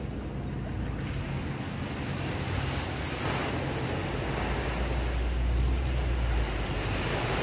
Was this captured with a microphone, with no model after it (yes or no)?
yes